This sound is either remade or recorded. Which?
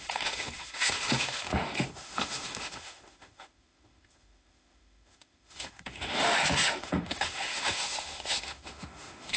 remade